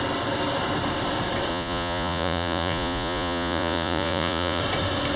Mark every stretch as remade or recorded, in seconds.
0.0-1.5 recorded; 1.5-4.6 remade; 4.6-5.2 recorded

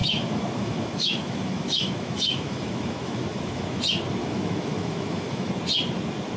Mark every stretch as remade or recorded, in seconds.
0.0-3.8 remade; 3.8-4.2 recorded; 4.2-5.5 remade; 5.5-6.4 recorded

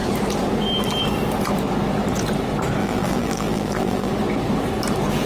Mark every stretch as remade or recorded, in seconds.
0.0-2.8 recorded; 2.8-4.1 remade; 4.1-5.3 recorded

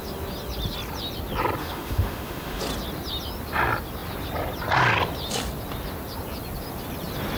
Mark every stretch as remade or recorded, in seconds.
0.0-1.6 recorded; 1.6-2.6 remade; 2.6-7.4 recorded

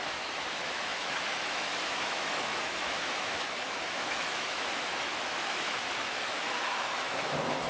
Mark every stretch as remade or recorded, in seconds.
0.0-7.7 remade

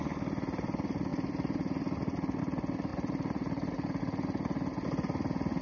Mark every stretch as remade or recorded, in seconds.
0.0-2.9 recorded; 2.9-4.0 remade; 4.0-5.6 recorded